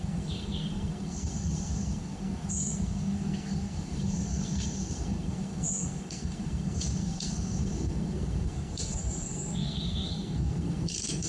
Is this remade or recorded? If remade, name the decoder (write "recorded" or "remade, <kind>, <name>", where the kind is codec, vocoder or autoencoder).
remade, codec, SNAC